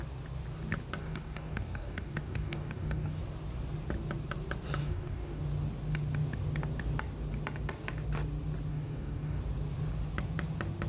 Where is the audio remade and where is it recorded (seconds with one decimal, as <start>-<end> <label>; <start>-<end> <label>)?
0.0-1.0 recorded; 1.0-3.2 remade; 3.2-4.8 recorded; 4.8-5.4 remade; 5.4-8.7 recorded; 8.7-9.4 remade; 9.4-10.9 recorded